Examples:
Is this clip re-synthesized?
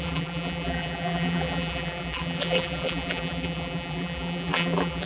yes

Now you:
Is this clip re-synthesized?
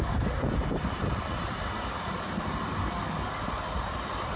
no